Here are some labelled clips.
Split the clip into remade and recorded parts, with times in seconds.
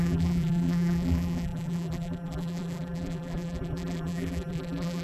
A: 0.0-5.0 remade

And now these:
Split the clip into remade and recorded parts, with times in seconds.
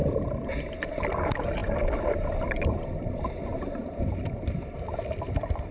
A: 0.0-3.5 recorded; 3.5-4.2 remade; 4.2-5.7 recorded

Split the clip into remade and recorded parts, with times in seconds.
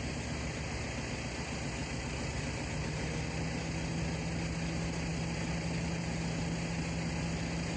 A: 0.0-1.8 recorded; 1.8-2.9 remade; 2.9-7.8 recorded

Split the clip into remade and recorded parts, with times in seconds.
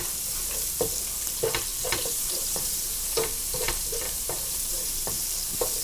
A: 0.0-1.7 recorded; 1.7-5.2 remade; 5.2-5.8 recorded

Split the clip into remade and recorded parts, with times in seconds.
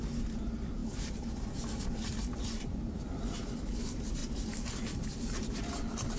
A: 0.0-6.2 remade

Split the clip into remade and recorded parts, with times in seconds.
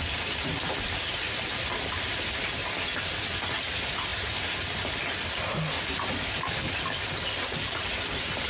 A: 0.0-2.6 remade; 2.6-3.4 recorded; 3.4-8.5 remade